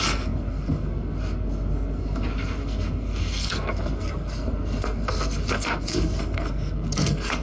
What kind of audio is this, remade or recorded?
remade